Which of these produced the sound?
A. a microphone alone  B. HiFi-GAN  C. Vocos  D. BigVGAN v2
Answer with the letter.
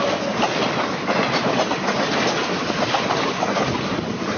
A